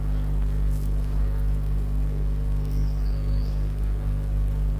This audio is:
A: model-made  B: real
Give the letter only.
A